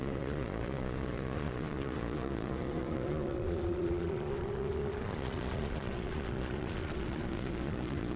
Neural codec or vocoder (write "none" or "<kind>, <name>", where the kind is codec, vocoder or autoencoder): vocoder, Vocos